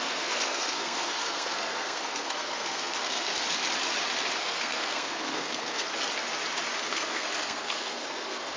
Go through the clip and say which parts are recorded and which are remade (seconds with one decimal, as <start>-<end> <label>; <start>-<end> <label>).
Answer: 0.0-3.3 remade; 3.3-4.4 recorded; 4.4-5.9 remade; 5.9-6.8 recorded; 6.8-8.6 remade